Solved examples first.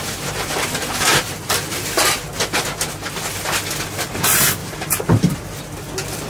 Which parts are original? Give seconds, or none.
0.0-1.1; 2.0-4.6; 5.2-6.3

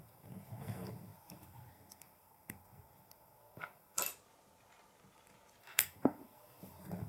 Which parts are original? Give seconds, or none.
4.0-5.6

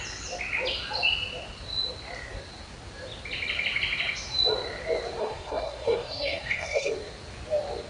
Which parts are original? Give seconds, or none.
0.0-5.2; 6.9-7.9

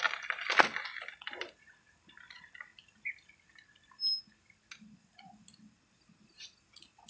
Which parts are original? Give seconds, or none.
0.0-7.1

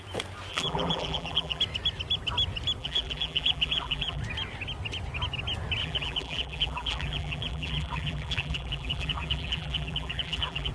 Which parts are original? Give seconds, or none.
0.0-0.5; 1.6-2.8; 4.2-5.8